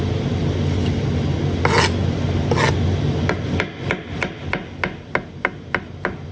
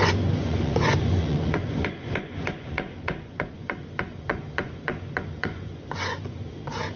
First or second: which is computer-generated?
second